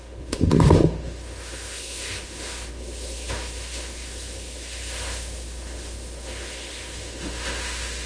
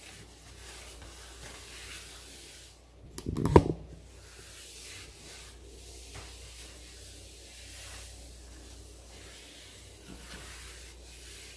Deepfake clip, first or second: first